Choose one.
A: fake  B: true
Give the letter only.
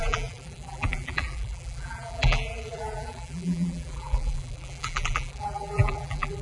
A